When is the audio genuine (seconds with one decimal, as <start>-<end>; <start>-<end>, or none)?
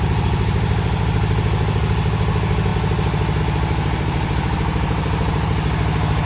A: 0.0-6.3